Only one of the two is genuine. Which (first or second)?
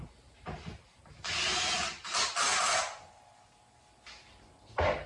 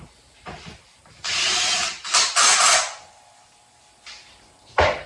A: first